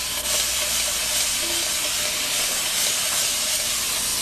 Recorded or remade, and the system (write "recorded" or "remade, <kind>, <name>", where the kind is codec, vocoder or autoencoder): recorded